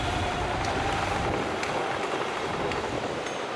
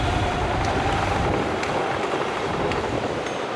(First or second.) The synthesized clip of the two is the second